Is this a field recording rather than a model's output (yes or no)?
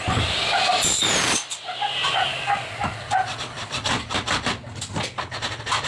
yes